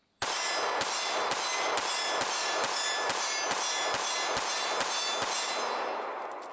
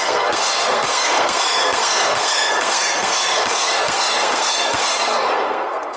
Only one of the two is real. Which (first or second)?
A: first